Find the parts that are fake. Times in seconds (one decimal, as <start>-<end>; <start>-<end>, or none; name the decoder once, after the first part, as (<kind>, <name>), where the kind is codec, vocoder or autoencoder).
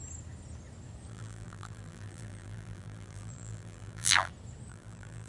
1.1-4.3 (vocoder, BigVGAN v2); 4.7-5.3